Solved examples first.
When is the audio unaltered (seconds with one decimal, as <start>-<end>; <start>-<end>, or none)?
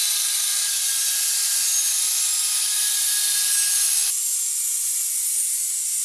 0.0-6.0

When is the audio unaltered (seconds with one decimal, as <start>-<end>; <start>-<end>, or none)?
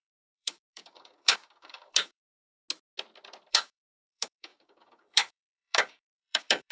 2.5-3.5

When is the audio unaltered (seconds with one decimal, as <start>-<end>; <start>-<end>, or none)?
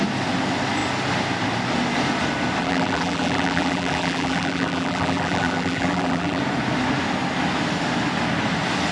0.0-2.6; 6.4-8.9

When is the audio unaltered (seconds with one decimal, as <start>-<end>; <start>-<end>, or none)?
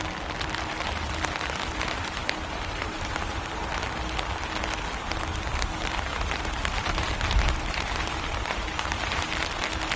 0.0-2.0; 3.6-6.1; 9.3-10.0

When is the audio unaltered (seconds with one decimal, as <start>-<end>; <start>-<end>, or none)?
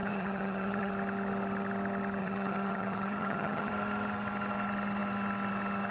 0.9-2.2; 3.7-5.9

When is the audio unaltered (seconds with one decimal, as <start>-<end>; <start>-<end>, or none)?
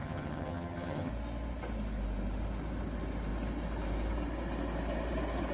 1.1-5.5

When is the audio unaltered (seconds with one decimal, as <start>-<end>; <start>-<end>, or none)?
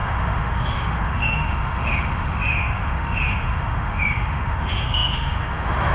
none